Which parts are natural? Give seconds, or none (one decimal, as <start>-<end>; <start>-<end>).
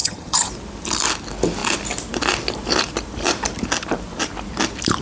0.5-5.0